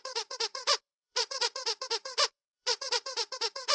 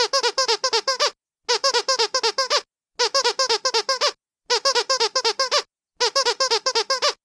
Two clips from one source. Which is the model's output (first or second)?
first